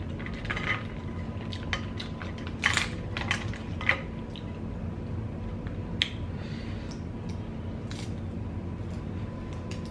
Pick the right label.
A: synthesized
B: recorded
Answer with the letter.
B